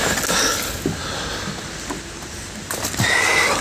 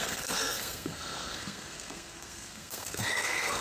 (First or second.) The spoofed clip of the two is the second